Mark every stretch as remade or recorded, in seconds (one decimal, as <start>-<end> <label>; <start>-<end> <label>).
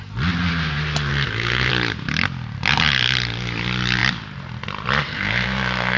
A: 0.0-1.1 recorded; 1.1-1.7 remade; 1.7-5.0 recorded; 5.0-6.0 remade